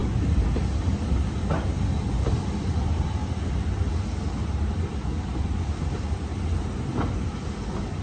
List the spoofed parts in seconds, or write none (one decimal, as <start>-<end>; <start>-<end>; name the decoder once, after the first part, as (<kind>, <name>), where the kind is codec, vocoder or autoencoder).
0.0-3.2 (vocoder, BigVGAN v2); 4.3-6.3; 7.2-8.0